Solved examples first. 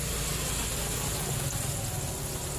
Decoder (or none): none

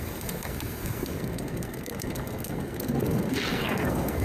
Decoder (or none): codec, SNAC